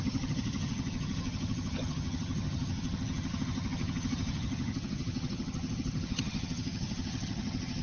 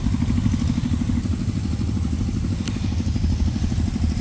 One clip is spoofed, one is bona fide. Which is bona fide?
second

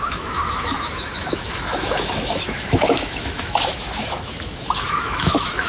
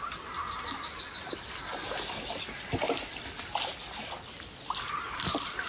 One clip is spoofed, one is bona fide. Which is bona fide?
second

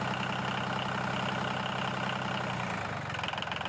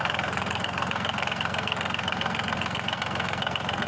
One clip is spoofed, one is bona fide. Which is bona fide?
first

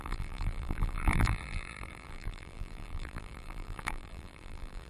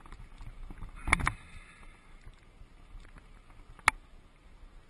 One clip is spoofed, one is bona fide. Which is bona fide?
second